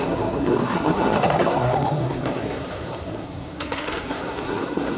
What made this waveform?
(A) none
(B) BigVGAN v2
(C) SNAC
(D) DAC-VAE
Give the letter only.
C